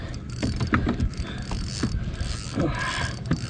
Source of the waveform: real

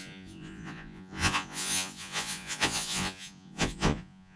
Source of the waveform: fake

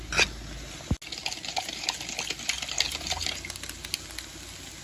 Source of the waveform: real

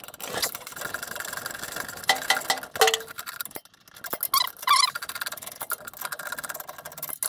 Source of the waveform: real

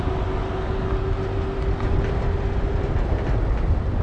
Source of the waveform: real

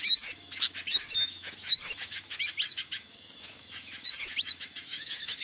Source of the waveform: fake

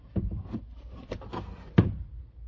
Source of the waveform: fake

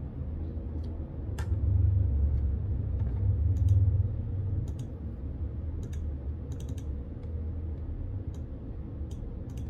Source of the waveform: real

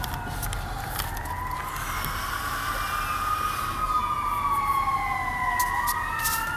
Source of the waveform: real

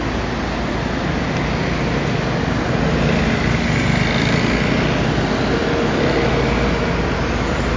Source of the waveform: real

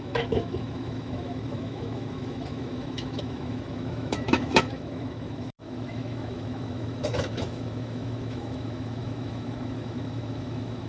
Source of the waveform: fake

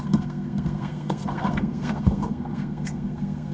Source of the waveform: fake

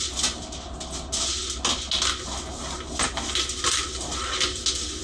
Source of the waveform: real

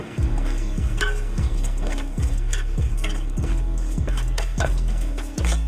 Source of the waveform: fake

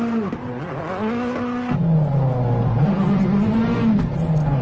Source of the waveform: real